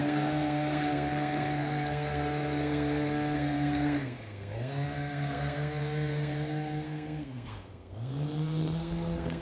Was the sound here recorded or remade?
remade